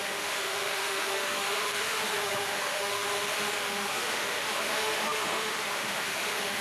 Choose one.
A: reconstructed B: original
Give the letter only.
A